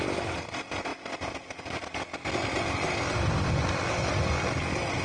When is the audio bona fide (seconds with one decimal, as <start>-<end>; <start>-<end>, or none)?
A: 0.0-5.0